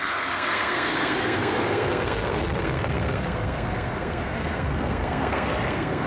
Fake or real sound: fake